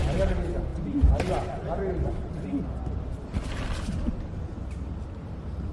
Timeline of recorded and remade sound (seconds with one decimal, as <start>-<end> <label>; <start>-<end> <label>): 0.0-5.7 recorded